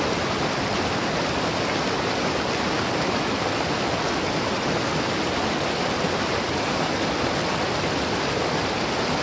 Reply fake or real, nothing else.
real